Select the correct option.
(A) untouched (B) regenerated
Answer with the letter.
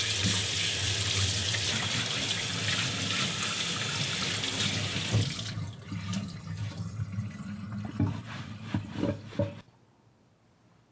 A